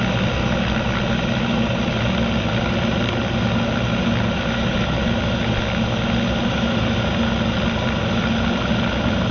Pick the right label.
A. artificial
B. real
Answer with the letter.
B